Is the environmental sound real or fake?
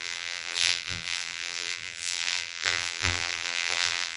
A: fake